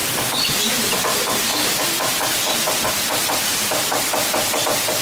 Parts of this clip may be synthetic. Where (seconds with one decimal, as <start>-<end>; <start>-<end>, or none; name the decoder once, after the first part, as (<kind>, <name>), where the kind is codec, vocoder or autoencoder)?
0.0-0.6 (vocoder, BigVGAN v2); 1.5-3.4